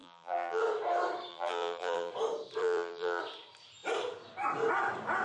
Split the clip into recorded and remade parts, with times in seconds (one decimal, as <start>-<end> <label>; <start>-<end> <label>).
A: 0.0-0.6 remade; 0.6-1.3 recorded; 1.3-2.1 remade; 2.1-2.6 recorded; 2.6-3.2 remade; 3.2-5.2 recorded